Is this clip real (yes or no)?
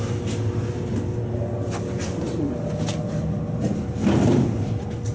yes